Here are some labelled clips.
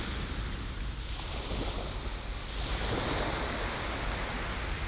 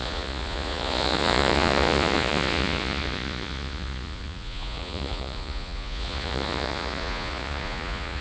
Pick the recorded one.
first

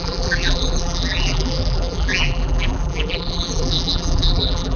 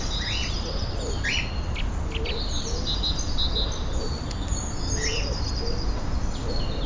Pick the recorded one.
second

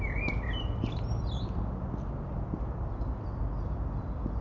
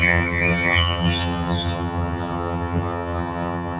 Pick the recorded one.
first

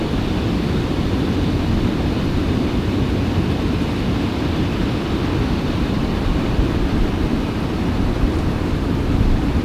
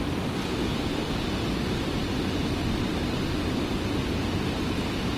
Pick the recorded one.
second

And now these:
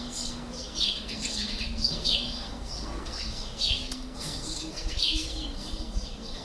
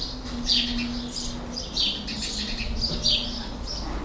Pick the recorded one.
second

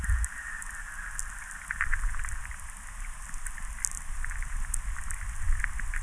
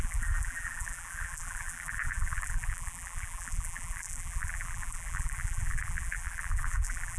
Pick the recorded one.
first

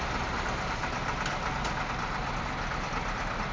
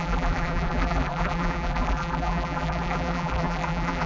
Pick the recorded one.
first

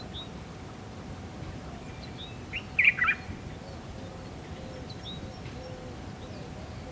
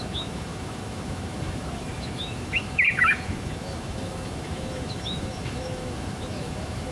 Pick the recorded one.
first